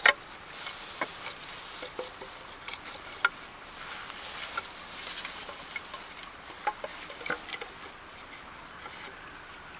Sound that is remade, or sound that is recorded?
recorded